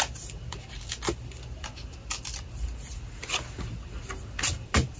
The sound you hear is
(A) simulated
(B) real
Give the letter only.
B